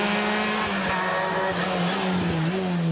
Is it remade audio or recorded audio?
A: recorded